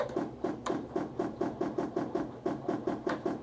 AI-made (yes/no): no